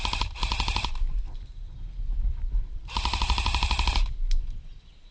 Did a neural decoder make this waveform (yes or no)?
no